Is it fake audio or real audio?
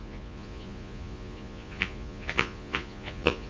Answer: fake